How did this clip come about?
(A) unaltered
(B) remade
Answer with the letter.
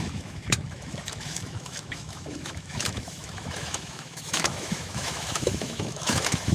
B